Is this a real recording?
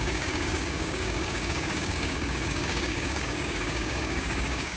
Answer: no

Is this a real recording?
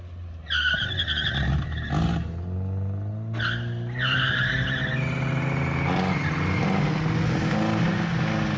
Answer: yes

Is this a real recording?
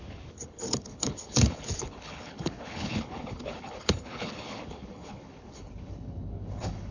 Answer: no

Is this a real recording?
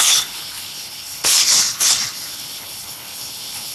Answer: no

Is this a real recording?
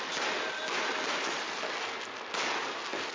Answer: yes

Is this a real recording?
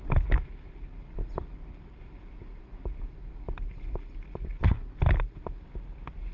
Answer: yes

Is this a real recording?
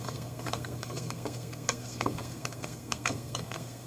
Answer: no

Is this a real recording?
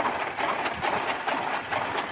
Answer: yes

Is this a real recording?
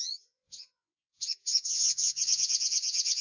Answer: no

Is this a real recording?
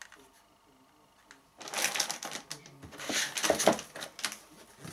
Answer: yes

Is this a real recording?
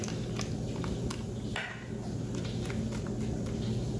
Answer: yes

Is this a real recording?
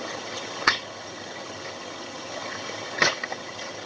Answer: no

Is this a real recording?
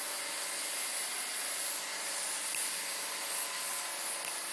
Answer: yes